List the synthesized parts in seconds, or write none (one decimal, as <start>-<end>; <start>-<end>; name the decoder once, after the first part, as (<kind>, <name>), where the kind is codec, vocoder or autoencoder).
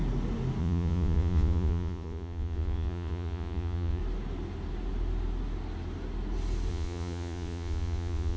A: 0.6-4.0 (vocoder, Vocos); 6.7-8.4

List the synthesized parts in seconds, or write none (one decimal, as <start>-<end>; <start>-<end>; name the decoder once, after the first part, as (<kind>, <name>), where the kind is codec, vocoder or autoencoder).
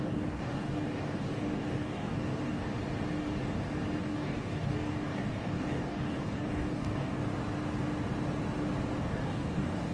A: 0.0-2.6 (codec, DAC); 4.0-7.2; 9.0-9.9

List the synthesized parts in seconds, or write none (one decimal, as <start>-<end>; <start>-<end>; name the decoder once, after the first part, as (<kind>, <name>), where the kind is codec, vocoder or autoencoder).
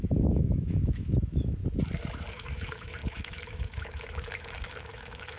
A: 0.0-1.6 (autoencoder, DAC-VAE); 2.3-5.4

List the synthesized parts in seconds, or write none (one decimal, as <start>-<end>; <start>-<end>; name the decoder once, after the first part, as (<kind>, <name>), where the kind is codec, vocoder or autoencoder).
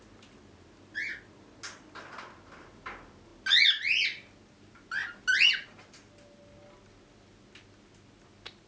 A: none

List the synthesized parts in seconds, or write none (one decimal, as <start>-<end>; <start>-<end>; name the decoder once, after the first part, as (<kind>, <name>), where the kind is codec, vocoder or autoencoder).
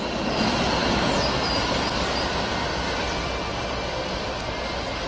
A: none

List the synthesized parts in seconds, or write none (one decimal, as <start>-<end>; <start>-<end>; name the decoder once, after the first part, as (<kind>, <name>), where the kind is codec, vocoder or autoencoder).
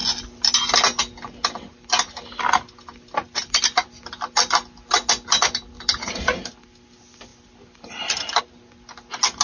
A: none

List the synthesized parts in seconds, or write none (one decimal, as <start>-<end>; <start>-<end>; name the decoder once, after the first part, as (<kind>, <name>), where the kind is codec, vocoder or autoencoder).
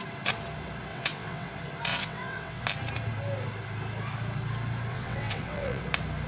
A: 0.9-1.5 (vocoder, WaveNeXt); 1.9-2.6; 4.9-5.8